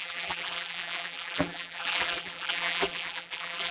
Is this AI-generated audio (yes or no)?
yes